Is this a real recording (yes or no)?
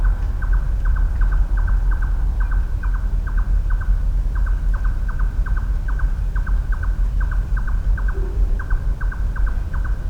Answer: no